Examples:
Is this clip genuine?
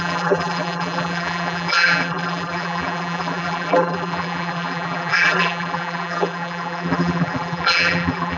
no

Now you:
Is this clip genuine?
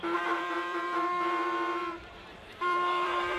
no